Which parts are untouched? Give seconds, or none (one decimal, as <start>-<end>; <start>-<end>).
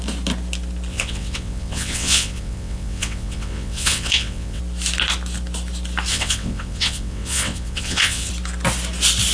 0.0-0.9; 4.6-6.1; 8.3-9.3